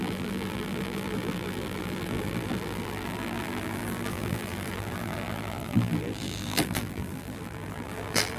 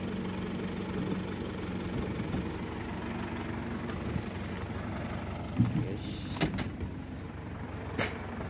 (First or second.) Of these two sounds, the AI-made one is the first